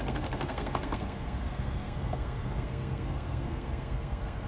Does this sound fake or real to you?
fake